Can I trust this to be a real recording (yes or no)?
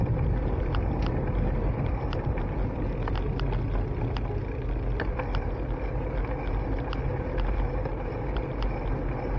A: yes